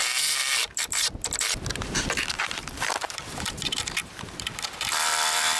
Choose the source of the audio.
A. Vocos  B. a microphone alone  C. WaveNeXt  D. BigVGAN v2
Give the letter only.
D